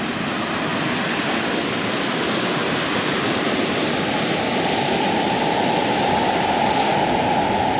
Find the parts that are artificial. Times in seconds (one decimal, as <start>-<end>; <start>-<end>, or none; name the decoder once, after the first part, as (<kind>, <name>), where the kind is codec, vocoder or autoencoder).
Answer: none